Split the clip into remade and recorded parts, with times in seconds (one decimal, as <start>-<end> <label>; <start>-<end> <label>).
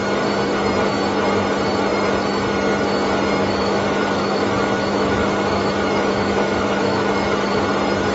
0.0-3.4 recorded; 3.4-7.6 remade; 7.6-8.1 recorded